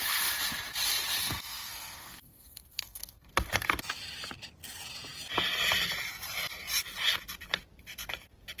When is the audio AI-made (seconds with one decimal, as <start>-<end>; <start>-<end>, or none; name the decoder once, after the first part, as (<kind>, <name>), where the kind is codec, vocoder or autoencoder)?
1.2-3.3 (codec, SNAC)